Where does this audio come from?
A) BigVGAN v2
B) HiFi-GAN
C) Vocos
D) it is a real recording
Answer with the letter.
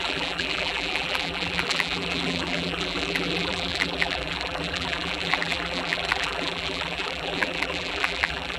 A